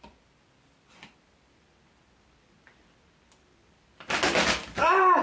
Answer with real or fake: real